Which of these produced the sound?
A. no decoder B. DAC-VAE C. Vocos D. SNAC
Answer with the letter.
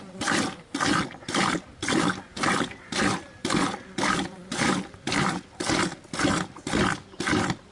A